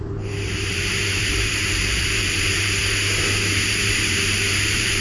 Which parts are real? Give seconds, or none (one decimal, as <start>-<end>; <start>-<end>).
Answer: 2.8-3.5